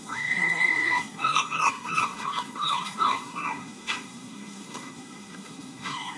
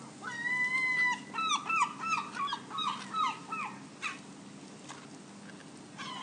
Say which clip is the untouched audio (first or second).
second